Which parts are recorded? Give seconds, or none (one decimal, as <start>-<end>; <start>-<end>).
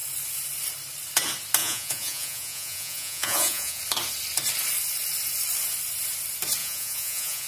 0.0-1.6; 3.8-6.6